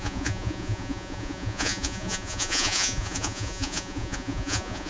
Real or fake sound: fake